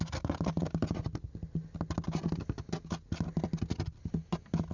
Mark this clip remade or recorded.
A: recorded